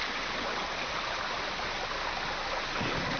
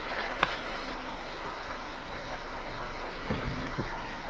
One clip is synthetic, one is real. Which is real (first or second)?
first